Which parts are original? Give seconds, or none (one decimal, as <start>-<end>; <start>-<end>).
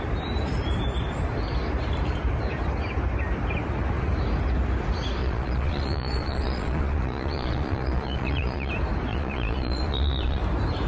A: 0.0-5.2; 8.7-9.1; 10.4-10.9